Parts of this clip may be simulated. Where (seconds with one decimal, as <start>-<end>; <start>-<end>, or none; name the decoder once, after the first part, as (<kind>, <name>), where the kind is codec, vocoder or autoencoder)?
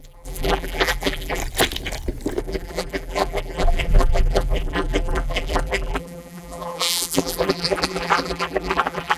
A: 0.0-1.4 (vocoder, BigVGAN v2); 2.4-9.2